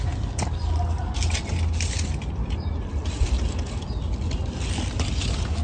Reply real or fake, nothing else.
real